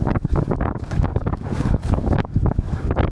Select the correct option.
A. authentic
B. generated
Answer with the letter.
B